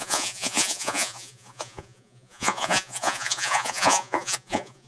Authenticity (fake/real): fake